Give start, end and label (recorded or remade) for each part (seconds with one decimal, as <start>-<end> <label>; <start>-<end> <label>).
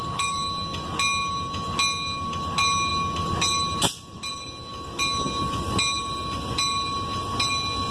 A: 0.0-7.9 recorded